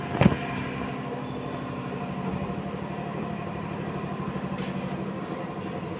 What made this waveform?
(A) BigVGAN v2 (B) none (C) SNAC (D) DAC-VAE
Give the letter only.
B